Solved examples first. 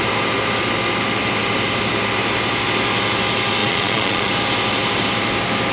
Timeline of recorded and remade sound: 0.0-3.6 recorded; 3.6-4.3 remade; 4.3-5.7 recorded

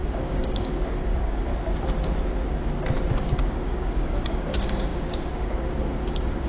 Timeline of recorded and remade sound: 0.0-1.5 remade; 1.5-3.1 recorded; 3.1-6.5 remade

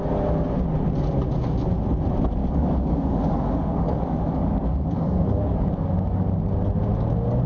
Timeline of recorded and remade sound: 0.0-2.4 recorded; 2.4-6.2 remade; 6.2-7.5 recorded

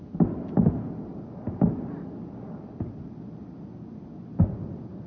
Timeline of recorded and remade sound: 0.0-5.1 recorded

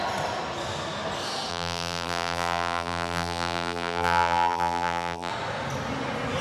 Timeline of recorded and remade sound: 0.0-1.5 recorded; 1.5-5.3 remade; 5.3-6.4 recorded

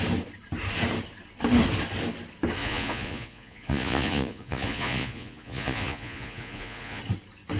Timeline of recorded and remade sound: 0.0-2.6 recorded; 2.6-7.0 remade; 7.0-7.6 recorded